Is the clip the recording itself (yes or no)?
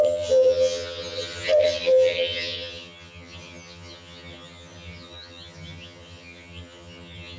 no